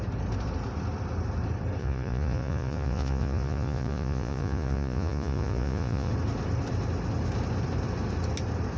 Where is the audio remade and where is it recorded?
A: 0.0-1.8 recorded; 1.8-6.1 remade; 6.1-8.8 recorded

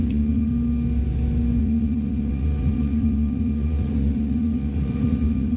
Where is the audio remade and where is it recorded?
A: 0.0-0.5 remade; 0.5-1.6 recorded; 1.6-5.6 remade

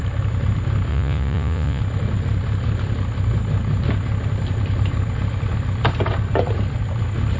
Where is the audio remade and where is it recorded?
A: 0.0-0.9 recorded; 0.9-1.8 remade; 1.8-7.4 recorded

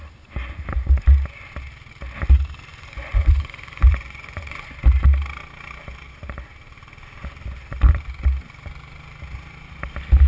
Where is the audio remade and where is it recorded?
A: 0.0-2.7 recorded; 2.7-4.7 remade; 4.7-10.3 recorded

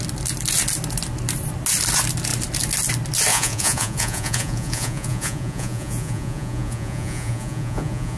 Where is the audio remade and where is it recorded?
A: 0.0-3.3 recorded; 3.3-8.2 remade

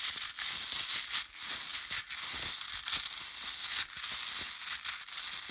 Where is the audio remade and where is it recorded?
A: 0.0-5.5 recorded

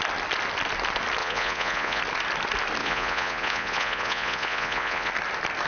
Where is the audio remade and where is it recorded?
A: 0.0-1.2 recorded; 1.2-2.0 remade; 2.0-2.8 recorded; 2.8-5.1 remade; 5.1-5.7 recorded